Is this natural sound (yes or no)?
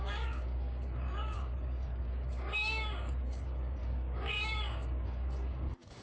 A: no